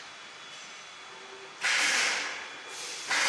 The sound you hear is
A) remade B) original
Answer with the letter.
B